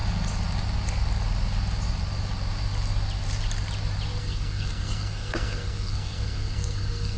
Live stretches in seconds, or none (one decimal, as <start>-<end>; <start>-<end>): 0.0-4.2